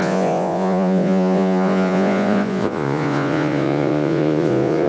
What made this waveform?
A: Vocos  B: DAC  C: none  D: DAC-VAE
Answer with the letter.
A